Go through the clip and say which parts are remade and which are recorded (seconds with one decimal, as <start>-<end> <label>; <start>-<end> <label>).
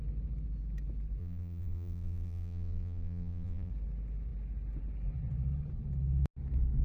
0.0-1.2 recorded; 1.2-3.7 remade; 3.7-6.8 recorded